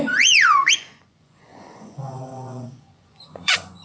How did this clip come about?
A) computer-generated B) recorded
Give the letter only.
A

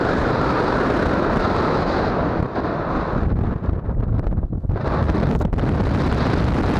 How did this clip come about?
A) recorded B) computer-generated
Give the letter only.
A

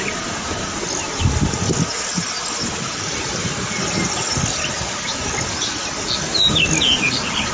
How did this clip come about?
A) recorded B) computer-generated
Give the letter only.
A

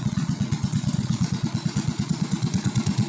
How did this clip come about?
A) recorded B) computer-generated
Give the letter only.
B